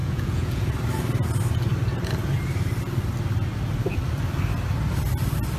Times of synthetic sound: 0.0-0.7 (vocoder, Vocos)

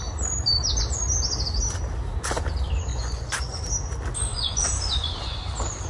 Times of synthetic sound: 2.9-3.6 (vocoder, Vocos); 4.3-5.4

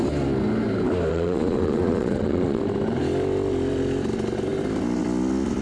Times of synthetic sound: 1.1-2.6 (vocoder, Vocos)